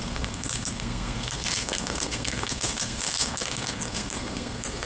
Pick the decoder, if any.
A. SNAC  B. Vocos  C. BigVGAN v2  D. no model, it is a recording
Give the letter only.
A